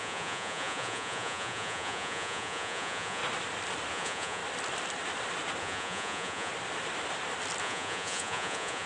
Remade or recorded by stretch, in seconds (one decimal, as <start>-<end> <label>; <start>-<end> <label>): 0.0-3.2 remade; 3.2-3.9 recorded; 3.9-4.4 remade; 4.4-5.6 recorded; 5.6-6.5 remade; 6.5-7.6 recorded; 7.6-8.9 remade

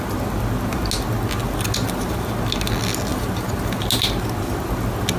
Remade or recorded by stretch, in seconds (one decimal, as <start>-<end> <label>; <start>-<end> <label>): 0.0-5.2 recorded

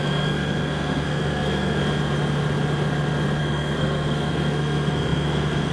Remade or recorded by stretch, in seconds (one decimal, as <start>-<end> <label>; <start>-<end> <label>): 0.0-1.8 remade; 1.8-3.4 recorded; 3.4-5.7 remade

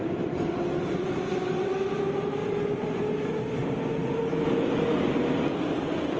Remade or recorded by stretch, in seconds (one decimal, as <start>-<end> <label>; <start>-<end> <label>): 0.0-6.2 recorded

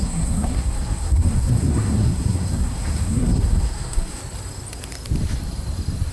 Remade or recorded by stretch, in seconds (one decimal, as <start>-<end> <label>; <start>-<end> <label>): 0.0-4.2 remade; 4.2-6.1 recorded

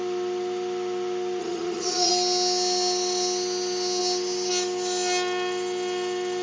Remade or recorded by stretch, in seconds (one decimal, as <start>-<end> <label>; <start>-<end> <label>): 0.0-1.4 recorded; 1.4-2.1 remade; 2.1-6.4 recorded

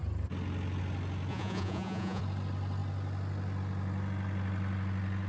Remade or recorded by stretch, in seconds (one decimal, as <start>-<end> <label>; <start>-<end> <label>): 0.0-1.3 recorded; 1.3-2.2 remade; 2.2-5.3 recorded